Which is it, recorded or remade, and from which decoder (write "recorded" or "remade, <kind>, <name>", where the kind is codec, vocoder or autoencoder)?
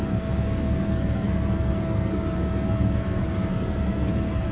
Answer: remade, codec, SNAC